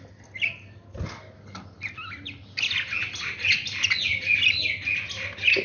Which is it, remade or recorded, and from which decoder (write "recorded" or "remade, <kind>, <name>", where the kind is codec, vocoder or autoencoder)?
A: recorded